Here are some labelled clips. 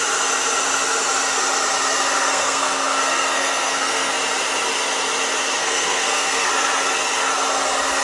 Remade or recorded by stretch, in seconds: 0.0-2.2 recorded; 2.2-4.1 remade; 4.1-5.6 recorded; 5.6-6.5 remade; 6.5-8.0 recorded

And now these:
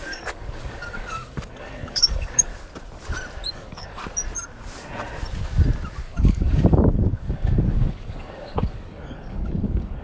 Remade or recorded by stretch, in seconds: 0.0-2.5 remade; 2.5-3.5 recorded; 3.5-4.0 remade; 4.0-6.0 recorded; 6.0-10.0 remade

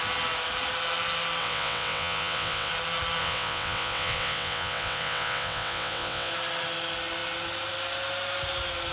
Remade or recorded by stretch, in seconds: 0.0-1.4 recorded; 1.4-2.7 remade; 2.7-3.2 recorded; 3.2-6.3 remade; 6.3-8.9 recorded